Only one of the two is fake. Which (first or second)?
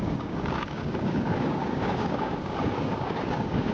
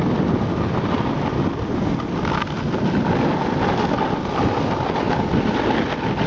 first